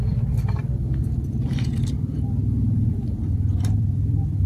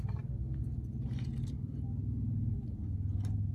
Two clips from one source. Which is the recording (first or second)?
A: second